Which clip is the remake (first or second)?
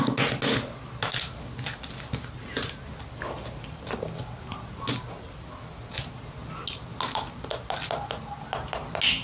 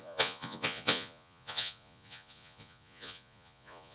second